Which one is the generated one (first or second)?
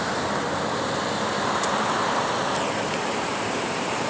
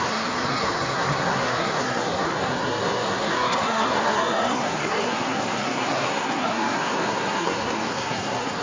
second